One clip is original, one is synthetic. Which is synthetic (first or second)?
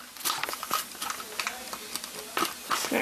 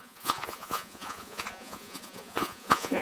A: second